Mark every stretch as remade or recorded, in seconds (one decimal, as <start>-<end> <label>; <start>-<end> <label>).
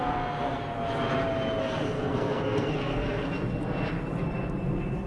0.0-0.6 remade; 0.6-1.6 recorded; 1.6-3.3 remade; 3.3-5.1 recorded